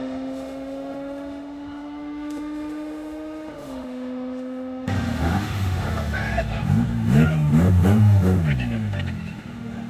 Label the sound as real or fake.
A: fake